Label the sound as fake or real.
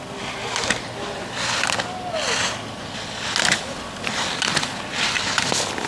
real